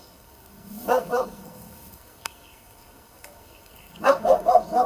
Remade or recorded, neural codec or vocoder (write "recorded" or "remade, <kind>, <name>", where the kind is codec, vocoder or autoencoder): remade, codec, SNAC